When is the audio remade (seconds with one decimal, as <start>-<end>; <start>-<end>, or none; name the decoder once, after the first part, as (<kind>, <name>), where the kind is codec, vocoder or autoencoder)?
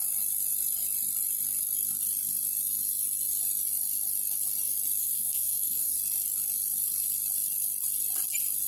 5.0-5.9 (codec, SNAC)